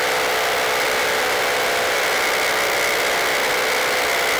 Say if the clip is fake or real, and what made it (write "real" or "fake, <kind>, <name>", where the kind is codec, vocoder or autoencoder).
real